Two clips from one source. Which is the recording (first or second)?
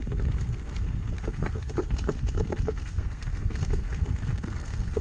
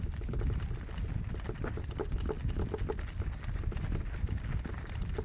second